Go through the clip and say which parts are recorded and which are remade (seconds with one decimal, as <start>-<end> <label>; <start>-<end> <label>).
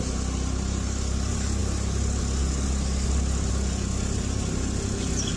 0.0-5.4 recorded